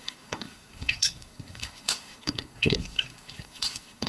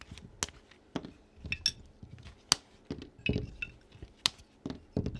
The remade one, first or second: first